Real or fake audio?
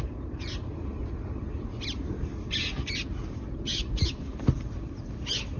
real